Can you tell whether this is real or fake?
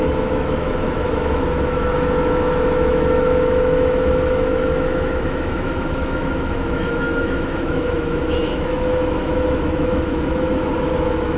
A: fake